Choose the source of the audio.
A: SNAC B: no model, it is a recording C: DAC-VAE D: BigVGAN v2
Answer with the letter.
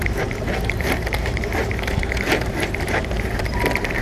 D